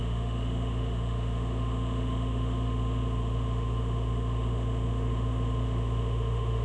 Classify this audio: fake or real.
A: fake